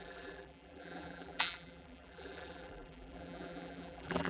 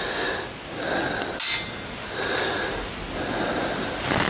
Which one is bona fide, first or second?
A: second